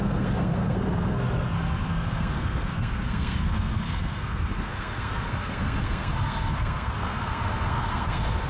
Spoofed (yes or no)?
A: yes